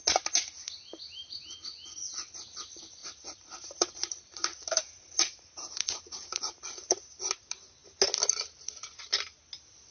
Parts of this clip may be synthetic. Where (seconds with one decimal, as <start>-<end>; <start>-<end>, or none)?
3.0-7.2